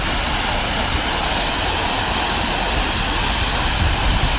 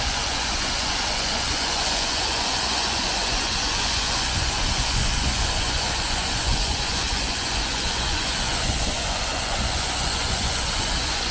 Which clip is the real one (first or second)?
first